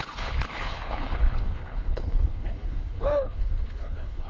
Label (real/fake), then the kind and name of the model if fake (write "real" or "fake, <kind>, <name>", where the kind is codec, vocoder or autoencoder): fake, codec, HILCodec